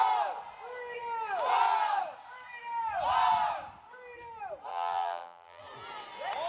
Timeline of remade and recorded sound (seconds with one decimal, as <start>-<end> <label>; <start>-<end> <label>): 0.0-4.7 recorded; 4.7-5.6 remade; 5.6-6.5 recorded